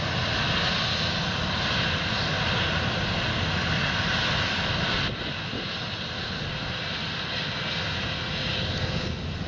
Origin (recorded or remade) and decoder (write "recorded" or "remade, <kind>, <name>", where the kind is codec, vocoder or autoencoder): recorded